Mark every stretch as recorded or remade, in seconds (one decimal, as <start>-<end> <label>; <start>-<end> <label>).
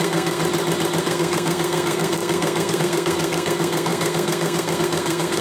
0.0-0.4 remade; 0.4-1.0 recorded; 1.0-5.4 remade